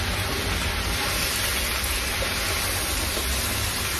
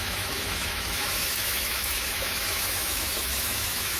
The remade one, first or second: second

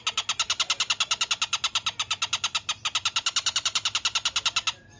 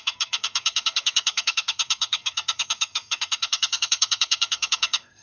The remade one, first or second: second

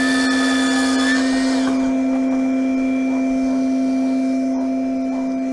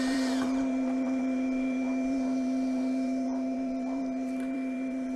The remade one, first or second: second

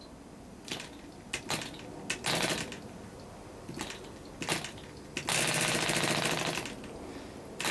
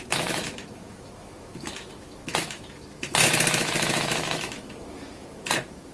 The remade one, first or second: second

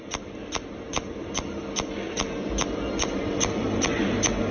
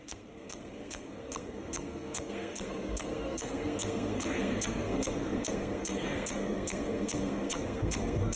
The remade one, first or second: second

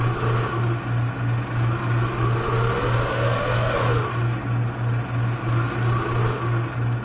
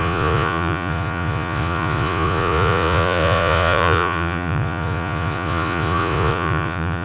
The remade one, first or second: second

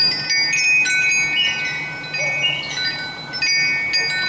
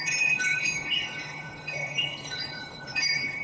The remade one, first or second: second